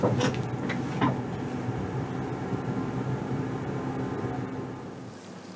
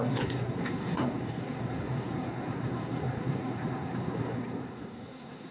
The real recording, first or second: first